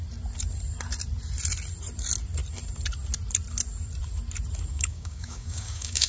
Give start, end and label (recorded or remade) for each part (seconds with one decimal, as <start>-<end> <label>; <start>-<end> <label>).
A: 0.0-4.7 recorded; 4.7-6.1 remade